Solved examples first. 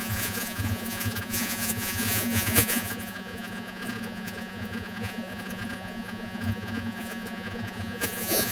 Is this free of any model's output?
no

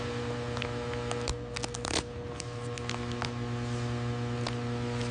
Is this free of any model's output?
yes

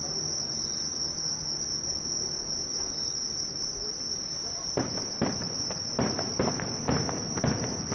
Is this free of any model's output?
yes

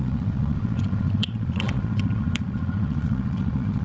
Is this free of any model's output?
no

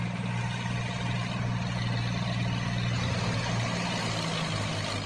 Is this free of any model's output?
yes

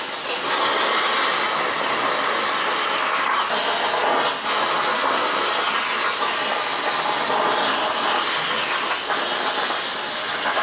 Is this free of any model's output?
yes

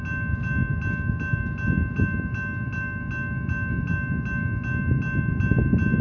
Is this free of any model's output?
yes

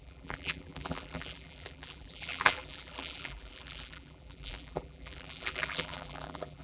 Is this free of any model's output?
no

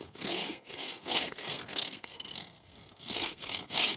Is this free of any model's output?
no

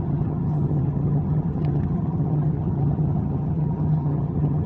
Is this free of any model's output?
no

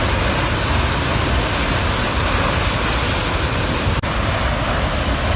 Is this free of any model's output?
yes